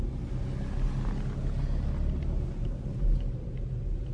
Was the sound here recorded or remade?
recorded